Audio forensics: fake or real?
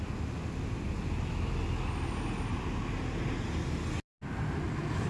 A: real